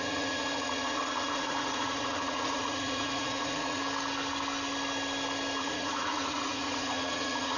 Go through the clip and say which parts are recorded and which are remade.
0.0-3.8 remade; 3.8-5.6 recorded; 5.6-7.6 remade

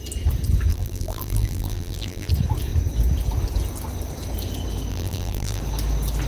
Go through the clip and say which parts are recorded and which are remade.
0.0-0.7 recorded; 0.7-2.3 remade; 2.3-4.9 recorded; 4.9-5.6 remade; 5.6-6.3 recorded

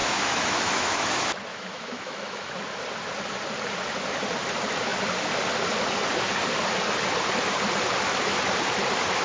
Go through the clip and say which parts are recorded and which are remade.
0.0-1.1 remade; 1.1-1.5 recorded; 1.5-2.5 remade; 2.5-9.2 recorded

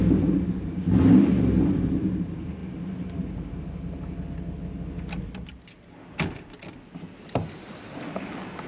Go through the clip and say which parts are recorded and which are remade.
0.0-8.7 recorded

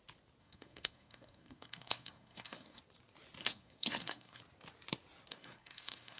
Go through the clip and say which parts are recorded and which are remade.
0.0-0.4 recorded; 0.4-2.8 remade; 2.8-3.4 recorded; 3.4-4.4 remade; 4.4-5.3 recorded; 5.3-6.2 remade

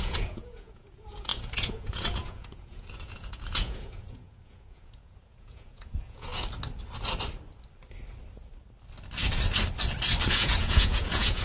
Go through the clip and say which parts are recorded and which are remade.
0.0-6.3 remade; 6.3-10.3 recorded; 10.3-11.4 remade

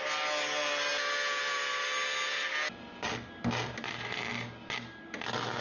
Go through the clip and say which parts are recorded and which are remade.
0.0-5.6 recorded

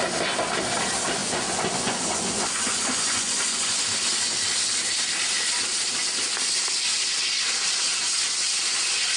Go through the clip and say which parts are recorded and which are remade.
0.0-1.2 recorded; 1.2-3.8 remade; 3.8-9.2 recorded